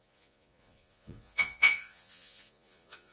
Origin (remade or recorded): remade